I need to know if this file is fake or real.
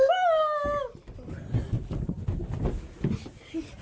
real